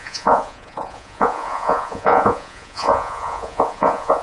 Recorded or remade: remade